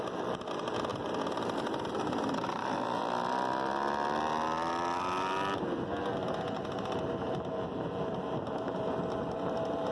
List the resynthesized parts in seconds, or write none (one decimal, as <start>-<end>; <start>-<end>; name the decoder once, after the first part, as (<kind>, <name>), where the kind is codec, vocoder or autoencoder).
0.0-3.0 (vocoder, BigVGAN v2); 6.3-9.9